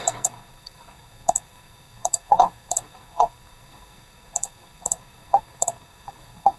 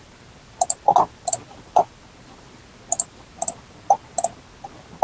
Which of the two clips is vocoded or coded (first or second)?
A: first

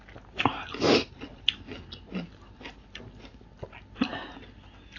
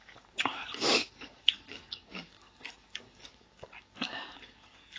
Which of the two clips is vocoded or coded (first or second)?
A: second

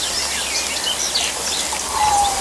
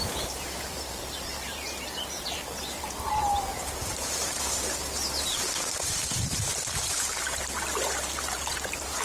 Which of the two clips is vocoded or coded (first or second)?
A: second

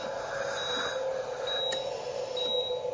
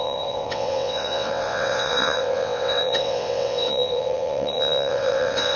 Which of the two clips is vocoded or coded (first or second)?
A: second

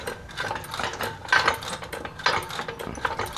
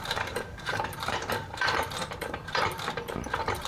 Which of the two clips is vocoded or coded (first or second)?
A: second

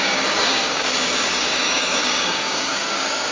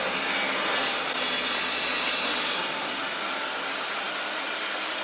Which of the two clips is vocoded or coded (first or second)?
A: first